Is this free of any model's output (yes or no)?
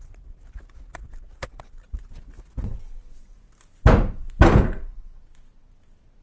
yes